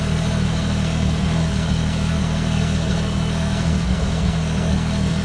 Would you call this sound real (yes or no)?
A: no